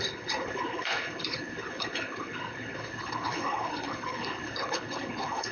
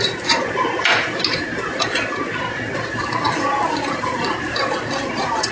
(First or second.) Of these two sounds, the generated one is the first